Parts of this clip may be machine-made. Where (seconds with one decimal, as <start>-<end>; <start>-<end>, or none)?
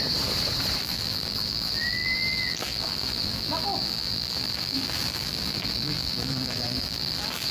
0.8-7.5